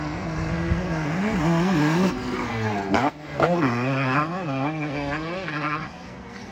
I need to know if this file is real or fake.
fake